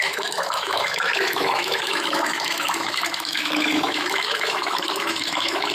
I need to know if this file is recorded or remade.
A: remade